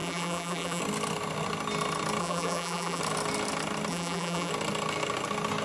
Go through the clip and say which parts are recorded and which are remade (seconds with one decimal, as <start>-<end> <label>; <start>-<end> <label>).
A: 0.0-0.8 remade; 0.8-2.2 recorded; 2.2-3.0 remade; 3.0-3.9 recorded; 3.9-4.5 remade; 4.5-5.6 recorded